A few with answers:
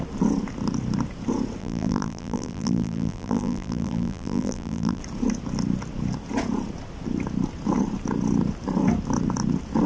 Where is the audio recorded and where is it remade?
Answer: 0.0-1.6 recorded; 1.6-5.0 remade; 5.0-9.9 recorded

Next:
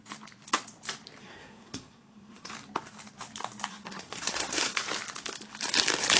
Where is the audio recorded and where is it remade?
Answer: 0.0-1.2 recorded; 1.2-2.5 remade; 2.5-3.7 recorded; 3.7-4.8 remade; 4.8-6.2 recorded

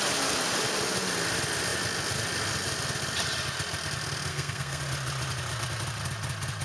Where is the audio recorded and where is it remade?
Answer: 0.0-4.3 recorded; 4.3-4.8 remade; 4.8-6.6 recorded